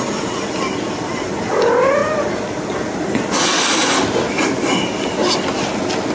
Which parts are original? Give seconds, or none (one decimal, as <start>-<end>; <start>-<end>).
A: 0.0-6.1

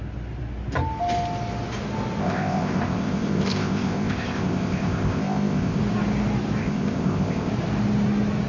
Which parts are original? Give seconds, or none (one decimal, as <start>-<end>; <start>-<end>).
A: 0.0-2.2; 5.8-6.6; 7.5-8.5

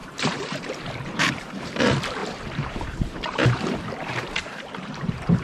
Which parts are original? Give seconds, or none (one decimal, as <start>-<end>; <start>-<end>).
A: 1.8-2.2

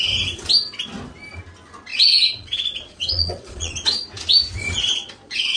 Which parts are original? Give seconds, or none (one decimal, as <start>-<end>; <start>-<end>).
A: 0.0-1.9; 3.7-4.6

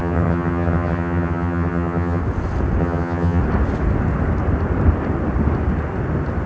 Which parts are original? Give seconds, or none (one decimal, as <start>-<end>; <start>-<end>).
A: 2.2-2.8; 3.4-6.5

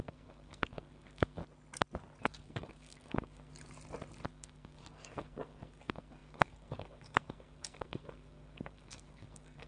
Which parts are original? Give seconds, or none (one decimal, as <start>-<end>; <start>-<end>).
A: 1.4-2.2; 3.5-4.3